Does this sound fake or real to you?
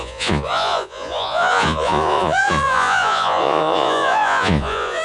fake